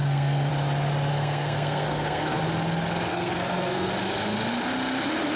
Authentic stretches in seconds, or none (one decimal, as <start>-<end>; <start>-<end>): 0.5-1.1; 2.4-3.1; 3.9-5.4